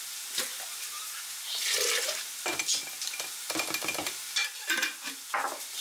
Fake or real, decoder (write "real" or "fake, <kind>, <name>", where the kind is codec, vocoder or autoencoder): real